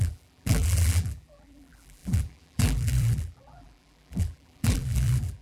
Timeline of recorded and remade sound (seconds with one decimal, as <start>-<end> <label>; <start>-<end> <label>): 0.0-5.4 remade